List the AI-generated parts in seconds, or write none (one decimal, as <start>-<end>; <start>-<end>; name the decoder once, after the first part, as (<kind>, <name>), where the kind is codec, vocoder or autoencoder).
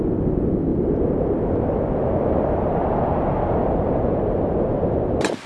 0.7-4.0 (vocoder, BigVGAN v2)